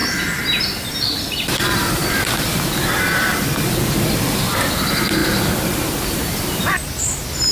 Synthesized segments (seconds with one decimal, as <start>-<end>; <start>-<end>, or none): 0.0-0.6; 2.0-2.9; 5.2-7.0